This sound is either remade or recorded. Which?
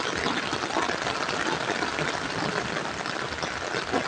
recorded